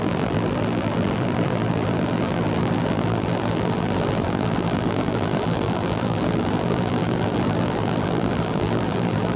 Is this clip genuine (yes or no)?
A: no